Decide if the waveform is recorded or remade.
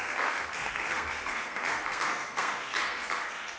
remade